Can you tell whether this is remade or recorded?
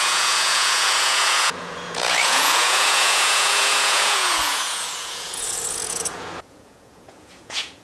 remade